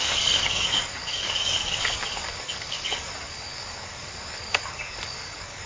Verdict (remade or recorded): remade